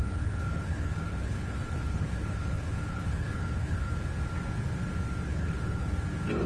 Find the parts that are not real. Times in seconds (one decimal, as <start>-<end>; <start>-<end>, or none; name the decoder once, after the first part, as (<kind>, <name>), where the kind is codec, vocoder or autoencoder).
0.0-3.9 (codec, HILCodec); 5.3-5.9